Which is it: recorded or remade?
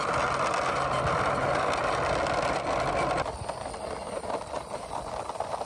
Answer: recorded